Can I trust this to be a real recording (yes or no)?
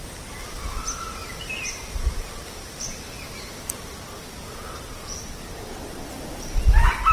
yes